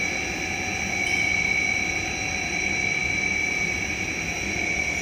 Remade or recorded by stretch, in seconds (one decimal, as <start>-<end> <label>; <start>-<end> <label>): 0.0-5.0 recorded